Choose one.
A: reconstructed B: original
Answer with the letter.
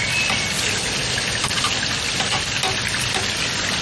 B